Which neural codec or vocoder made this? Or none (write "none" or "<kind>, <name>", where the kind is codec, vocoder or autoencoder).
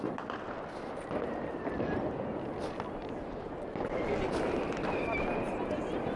none